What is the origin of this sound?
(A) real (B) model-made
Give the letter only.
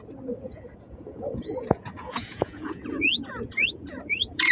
B